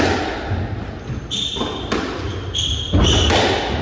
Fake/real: real